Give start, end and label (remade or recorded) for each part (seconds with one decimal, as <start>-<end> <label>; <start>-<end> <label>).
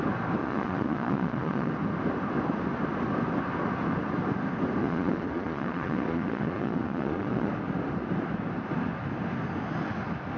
0.0-0.4 recorded; 0.4-1.7 remade; 1.7-4.8 recorded; 4.8-7.5 remade; 7.5-10.4 recorded